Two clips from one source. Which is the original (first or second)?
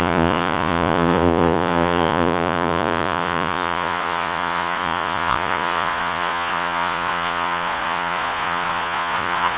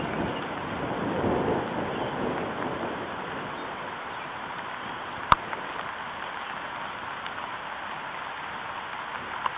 second